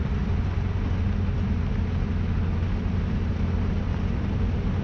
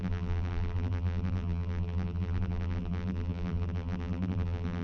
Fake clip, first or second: second